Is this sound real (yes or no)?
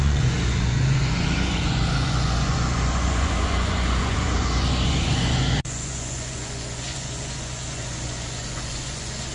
no